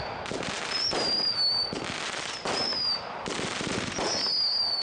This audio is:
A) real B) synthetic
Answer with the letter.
A